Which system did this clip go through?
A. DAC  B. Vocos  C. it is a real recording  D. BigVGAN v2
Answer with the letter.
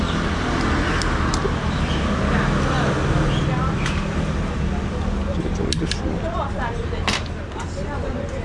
C